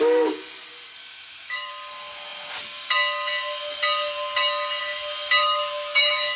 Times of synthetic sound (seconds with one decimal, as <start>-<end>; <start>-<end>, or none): 1.0-1.7; 5.4-6.4